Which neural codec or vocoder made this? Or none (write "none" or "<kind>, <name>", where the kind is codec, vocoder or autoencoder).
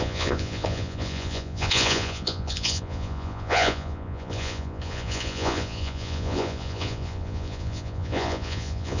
vocoder, Vocos